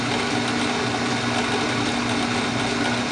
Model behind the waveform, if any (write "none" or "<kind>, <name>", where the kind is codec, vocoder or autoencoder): none